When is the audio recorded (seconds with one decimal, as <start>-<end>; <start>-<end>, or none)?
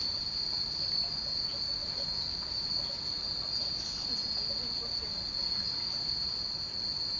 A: 1.2-1.8; 3.3-5.4; 6.1-7.2